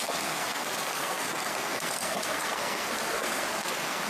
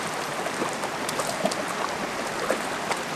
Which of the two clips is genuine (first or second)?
second